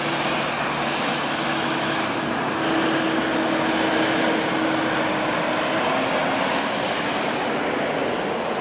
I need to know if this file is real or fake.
real